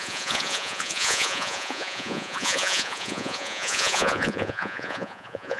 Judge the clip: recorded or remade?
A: remade